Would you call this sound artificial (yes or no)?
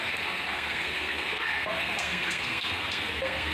yes